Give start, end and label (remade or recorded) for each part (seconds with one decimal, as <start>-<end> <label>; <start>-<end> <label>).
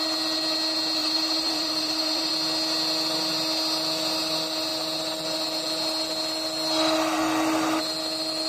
0.0-1.0 recorded; 1.0-2.3 remade; 2.3-8.5 recorded